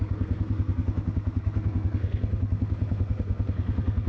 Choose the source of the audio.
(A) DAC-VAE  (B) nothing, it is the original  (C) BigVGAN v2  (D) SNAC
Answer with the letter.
D